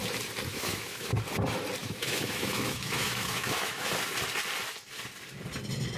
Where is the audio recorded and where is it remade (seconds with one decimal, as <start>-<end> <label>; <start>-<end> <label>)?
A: 0.0-0.5 recorded; 0.5-1.1 remade; 1.1-1.8 recorded; 1.8-3.9 remade; 3.9-6.0 recorded